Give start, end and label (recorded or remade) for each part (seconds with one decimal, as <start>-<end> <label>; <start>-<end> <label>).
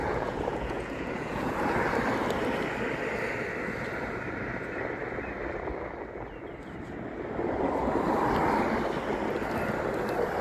0.0-1.5 remade; 1.5-10.4 recorded